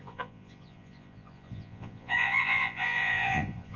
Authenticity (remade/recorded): remade